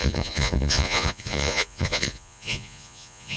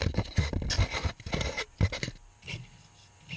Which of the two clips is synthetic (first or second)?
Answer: first